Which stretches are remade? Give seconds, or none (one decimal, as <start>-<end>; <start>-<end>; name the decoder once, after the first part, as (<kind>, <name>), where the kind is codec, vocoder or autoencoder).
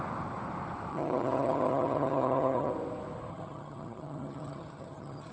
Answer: 0.9-2.7 (vocoder, HiFi-GAN); 3.3-5.3